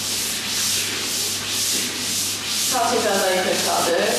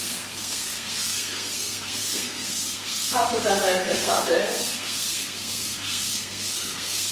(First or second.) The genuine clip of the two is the first